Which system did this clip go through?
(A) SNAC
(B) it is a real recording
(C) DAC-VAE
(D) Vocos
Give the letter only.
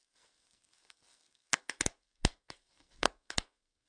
A